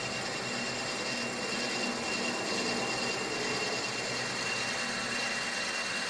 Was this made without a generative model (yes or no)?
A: yes